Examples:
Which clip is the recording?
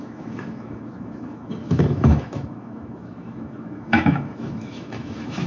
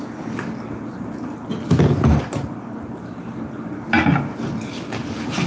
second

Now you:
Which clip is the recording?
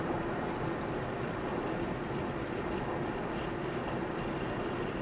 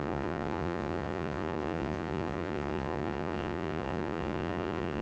first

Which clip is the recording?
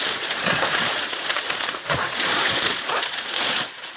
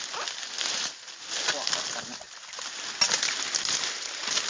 second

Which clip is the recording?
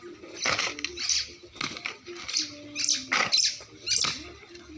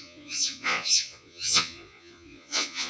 first